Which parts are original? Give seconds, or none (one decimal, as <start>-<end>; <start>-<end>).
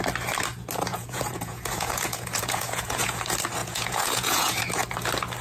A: 0.0-0.9; 3.2-3.6; 4.6-5.4